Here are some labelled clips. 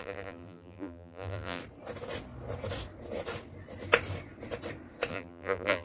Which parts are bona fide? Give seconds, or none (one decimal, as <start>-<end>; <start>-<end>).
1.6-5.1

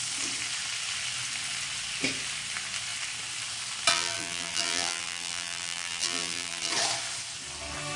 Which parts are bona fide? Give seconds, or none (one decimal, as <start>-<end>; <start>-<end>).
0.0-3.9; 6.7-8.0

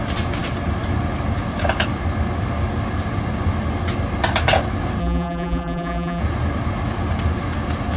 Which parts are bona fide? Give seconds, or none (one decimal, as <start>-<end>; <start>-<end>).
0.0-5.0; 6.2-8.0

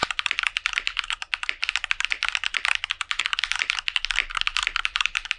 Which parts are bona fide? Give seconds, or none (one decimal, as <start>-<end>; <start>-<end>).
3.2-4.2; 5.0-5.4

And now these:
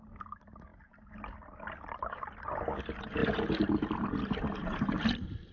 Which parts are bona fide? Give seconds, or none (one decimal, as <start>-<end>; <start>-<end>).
0.0-3.2; 4.0-5.5

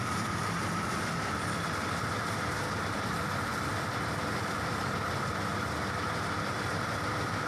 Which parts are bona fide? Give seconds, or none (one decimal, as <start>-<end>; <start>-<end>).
0.0-1.2; 5.7-7.5